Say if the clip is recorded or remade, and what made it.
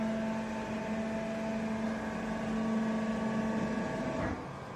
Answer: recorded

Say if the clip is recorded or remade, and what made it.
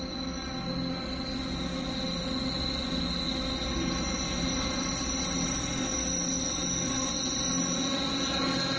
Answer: recorded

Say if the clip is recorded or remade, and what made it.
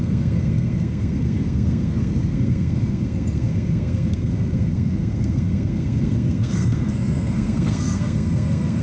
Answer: remade, codec, SNAC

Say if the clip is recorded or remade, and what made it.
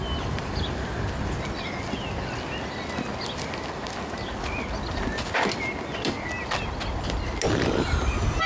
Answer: recorded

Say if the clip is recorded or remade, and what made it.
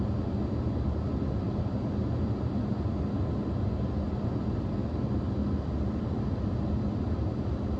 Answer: recorded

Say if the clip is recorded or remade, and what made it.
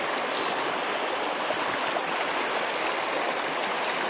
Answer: recorded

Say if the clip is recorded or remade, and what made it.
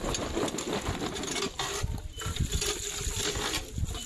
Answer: recorded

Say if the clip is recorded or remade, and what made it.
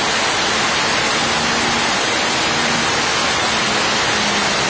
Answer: recorded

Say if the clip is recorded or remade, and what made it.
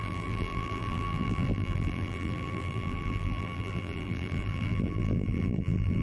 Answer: remade, vocoder, BigVGAN v2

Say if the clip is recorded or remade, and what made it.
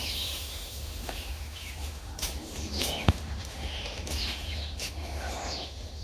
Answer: remade, autoencoder, DAC-VAE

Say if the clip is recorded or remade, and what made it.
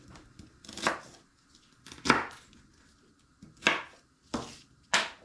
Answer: recorded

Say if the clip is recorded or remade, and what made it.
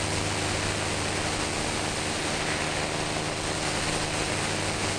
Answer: recorded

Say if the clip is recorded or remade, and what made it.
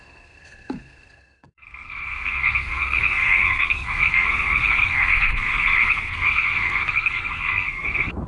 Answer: remade, codec, SNAC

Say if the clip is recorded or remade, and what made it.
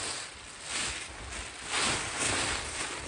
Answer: recorded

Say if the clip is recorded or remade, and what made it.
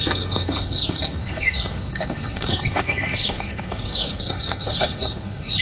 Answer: remade, codec, SNAC